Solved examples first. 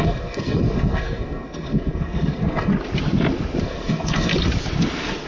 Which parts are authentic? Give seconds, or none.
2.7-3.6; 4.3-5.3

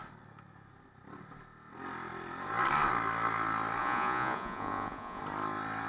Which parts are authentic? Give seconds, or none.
0.0-3.8; 5.2-5.9

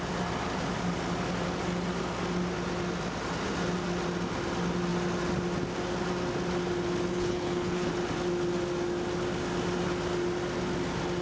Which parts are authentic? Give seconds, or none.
0.0-7.1; 7.9-11.2

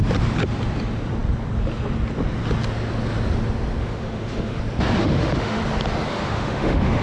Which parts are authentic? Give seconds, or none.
0.0-3.8; 4.6-5.0; 5.6-6.1

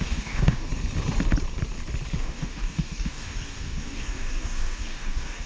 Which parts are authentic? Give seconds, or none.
0.7-2.2